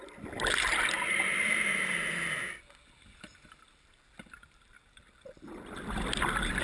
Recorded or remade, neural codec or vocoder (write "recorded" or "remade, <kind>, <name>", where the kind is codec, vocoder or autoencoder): recorded